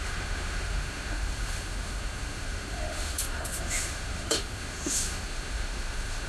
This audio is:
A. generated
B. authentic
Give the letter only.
A